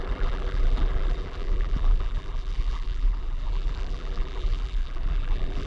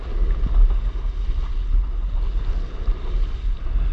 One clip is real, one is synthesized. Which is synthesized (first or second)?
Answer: first